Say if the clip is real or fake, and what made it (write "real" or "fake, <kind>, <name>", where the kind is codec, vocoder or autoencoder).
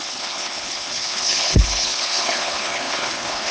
fake, codec, HILCodec